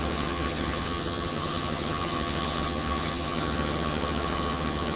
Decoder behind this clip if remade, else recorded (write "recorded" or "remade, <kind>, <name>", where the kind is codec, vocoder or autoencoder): remade, vocoder, HiFi-GAN